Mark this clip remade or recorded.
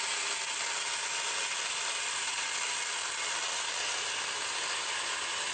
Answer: recorded